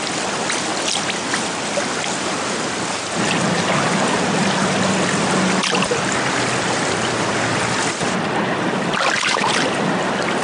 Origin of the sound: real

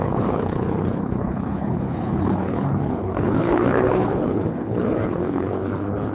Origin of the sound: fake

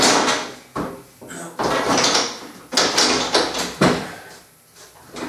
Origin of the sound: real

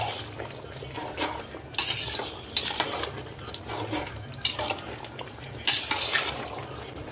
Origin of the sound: real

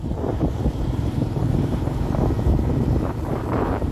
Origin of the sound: fake